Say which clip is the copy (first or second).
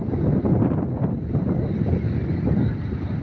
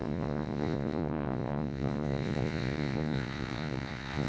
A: second